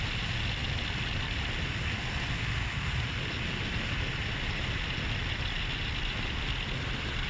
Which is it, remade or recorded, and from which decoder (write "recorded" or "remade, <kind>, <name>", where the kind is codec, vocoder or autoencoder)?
recorded